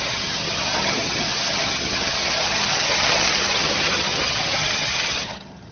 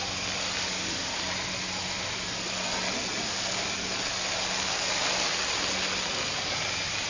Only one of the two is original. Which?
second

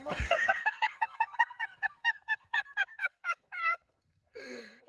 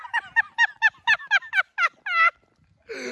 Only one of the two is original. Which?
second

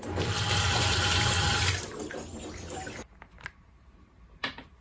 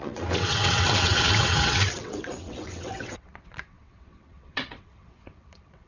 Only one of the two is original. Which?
first